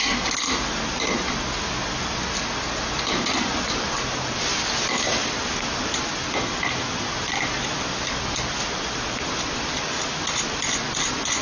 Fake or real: real